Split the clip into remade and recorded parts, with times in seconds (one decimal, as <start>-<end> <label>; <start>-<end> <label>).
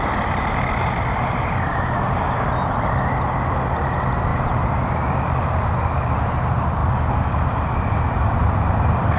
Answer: 0.0-1.7 recorded; 1.7-2.5 remade; 2.5-4.3 recorded; 4.3-4.9 remade; 4.9-9.2 recorded